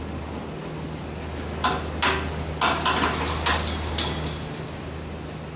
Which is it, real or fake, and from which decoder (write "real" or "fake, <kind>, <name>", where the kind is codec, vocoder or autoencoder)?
real